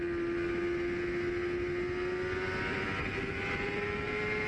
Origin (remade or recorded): recorded